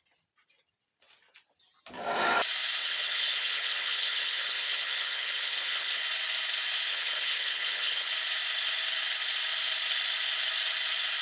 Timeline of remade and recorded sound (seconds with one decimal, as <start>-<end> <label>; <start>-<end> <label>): 0.0-2.8 recorded; 2.8-6.0 remade; 6.0-6.9 recorded; 6.9-8.1 remade; 8.1-11.2 recorded